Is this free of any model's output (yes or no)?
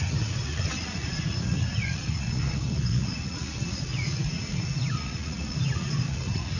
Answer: no